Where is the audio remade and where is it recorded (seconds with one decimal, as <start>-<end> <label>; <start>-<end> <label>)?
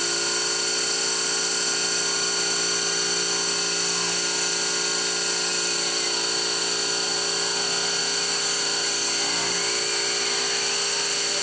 0.0-11.4 recorded